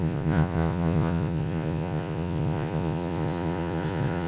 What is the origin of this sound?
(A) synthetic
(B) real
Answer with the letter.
A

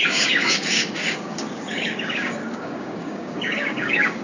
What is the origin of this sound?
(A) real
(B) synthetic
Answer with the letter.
B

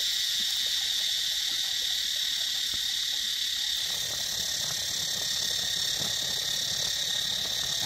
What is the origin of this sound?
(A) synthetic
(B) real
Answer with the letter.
B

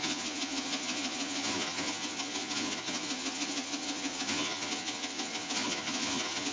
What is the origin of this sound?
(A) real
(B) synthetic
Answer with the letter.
B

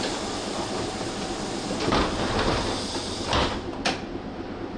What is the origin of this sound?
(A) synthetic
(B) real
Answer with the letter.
B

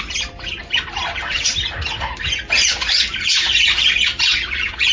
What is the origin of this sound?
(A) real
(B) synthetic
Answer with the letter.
A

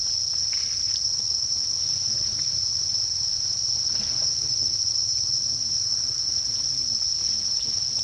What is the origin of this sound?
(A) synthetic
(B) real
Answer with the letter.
B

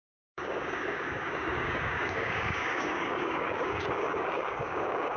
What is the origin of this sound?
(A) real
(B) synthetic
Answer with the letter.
B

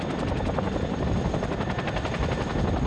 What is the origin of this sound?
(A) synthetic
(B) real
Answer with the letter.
B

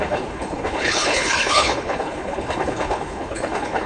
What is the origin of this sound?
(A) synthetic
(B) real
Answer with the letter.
A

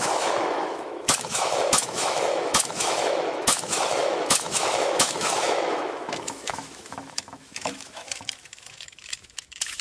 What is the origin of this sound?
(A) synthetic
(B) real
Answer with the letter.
A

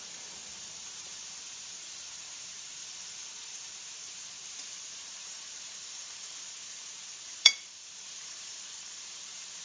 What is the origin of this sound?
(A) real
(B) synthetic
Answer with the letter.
B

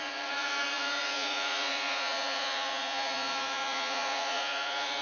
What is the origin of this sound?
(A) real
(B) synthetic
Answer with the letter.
B